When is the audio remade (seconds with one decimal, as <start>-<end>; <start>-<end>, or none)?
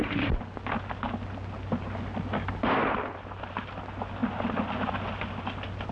none